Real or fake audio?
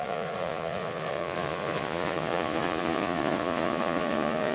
fake